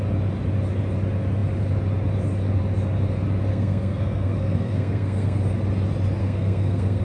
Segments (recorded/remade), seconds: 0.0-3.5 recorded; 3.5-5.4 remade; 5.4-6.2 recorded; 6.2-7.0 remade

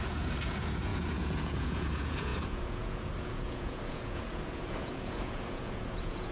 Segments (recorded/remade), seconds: 0.0-6.3 remade

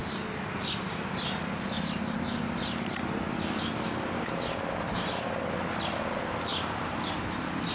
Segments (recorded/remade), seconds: 0.0-6.5 recorded; 6.5-7.7 remade